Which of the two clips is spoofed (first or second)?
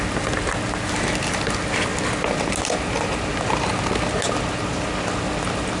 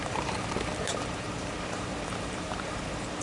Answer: second